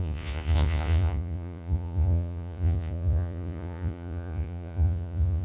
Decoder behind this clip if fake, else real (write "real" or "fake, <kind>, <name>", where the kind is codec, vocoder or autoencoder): fake, vocoder, Vocos